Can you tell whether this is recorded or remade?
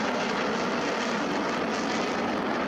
recorded